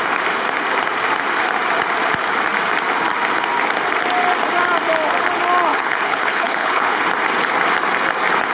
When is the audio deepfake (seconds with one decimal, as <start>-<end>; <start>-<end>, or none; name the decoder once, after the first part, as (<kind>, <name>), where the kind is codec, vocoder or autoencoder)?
5.7-7.0 (codec, HILCodec)